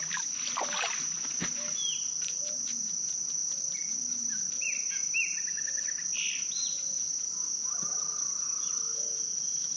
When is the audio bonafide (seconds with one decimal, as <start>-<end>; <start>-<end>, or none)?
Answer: 0.0-3.4; 7.6-9.8